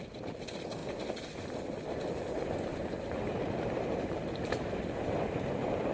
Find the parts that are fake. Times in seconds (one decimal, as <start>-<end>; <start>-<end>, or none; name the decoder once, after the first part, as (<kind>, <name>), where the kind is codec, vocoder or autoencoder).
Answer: 2.7-5.2 (vocoder, BigVGAN v2)